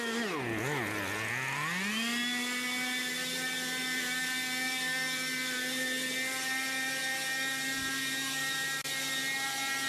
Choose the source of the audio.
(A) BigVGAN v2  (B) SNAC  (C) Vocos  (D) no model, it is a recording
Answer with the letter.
D